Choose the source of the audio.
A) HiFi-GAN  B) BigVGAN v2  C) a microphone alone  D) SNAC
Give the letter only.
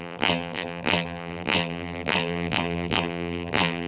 B